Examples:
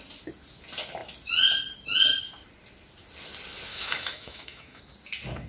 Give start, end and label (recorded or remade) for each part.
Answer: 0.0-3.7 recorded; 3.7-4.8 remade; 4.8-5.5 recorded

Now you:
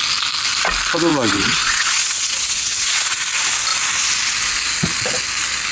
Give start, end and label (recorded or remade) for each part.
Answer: 0.0-1.1 recorded; 1.1-3.2 remade; 3.2-5.7 recorded

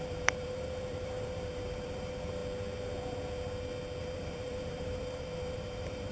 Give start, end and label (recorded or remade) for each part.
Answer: 0.0-2.4 remade; 2.4-4.0 recorded; 4.0-6.1 remade

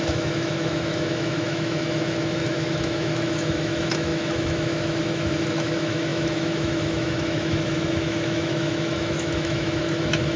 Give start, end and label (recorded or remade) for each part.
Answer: 0.0-10.4 remade

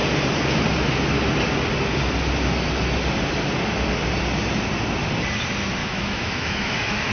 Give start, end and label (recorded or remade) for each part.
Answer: 0.0-5.8 recorded; 5.8-7.1 remade

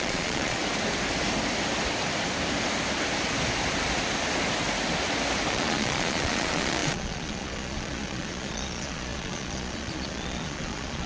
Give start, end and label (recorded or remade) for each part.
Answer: 0.0-0.6 remade; 0.6-5.5 recorded; 5.5-11.1 remade

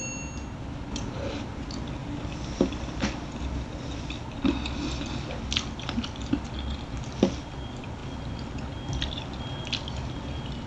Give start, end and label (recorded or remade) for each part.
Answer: 0.0-10.7 recorded